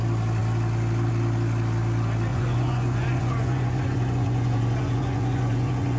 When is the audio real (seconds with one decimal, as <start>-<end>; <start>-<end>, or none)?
0.0-2.3